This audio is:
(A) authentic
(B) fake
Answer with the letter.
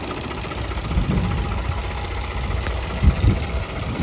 A